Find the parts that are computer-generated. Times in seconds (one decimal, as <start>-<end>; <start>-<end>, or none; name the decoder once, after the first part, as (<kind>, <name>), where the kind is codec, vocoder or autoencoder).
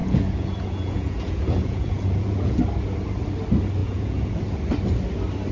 0.0-2.6 (vocoder, Vocos); 3.8-4.3